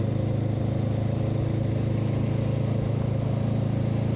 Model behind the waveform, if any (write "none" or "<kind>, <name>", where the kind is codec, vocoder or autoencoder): none